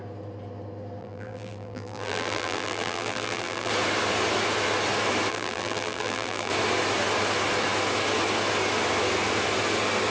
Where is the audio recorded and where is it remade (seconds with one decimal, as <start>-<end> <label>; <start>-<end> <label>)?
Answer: 0.0-1.0 recorded; 1.0-3.7 remade; 3.7-5.3 recorded; 5.3-6.5 remade; 6.5-10.1 recorded

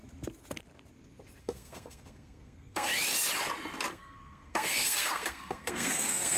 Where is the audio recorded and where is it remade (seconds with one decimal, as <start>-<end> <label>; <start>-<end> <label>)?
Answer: 0.0-1.4 recorded; 1.4-2.9 remade; 2.9-3.9 recorded; 3.9-6.4 remade

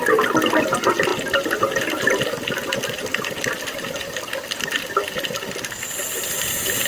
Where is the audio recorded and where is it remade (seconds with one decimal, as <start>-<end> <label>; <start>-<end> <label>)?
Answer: 0.0-1.1 recorded; 1.1-5.2 remade; 5.2-6.9 recorded

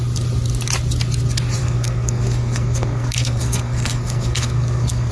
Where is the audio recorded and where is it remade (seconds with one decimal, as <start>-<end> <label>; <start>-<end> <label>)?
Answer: 0.0-1.6 recorded; 1.6-5.1 remade

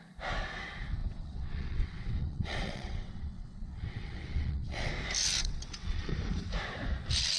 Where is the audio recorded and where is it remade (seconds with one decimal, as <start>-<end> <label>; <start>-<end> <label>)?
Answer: 0.0-1.0 recorded; 1.0-4.9 remade; 4.9-5.4 recorded; 5.4-6.1 remade; 6.1-7.4 recorded

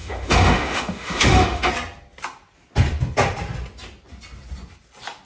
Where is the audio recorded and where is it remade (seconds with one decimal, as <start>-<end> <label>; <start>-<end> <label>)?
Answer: 0.0-1.7 remade; 1.7-5.3 recorded